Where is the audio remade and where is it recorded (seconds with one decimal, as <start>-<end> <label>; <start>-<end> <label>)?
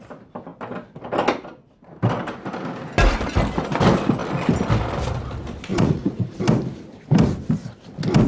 0.0-5.7 recorded; 5.7-6.3 remade; 6.3-8.3 recorded